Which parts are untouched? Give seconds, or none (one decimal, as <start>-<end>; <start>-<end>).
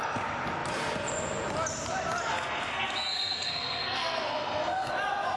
0.0-2.3; 4.9-5.4